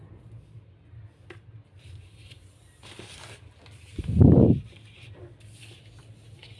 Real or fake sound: real